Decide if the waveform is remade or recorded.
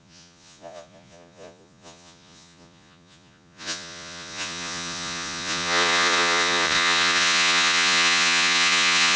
remade